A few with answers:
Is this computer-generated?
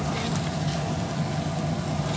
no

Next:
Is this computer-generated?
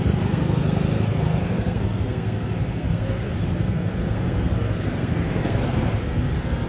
yes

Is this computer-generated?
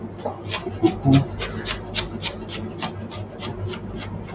no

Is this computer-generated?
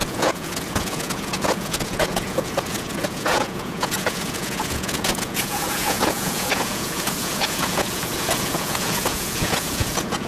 yes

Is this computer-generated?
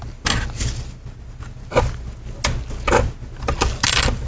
no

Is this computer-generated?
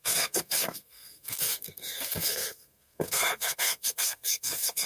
yes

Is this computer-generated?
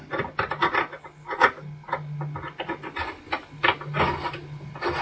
no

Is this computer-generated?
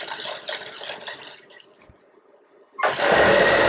no